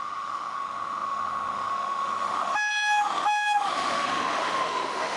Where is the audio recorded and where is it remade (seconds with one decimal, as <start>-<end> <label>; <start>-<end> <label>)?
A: 0.0-5.2 remade